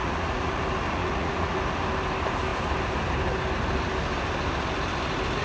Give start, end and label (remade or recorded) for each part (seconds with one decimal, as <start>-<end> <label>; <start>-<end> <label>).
0.0-0.6 remade; 0.6-1.0 recorded; 1.0-1.6 remade; 1.6-5.4 recorded